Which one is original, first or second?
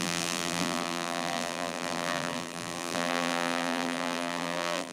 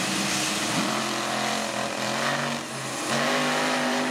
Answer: second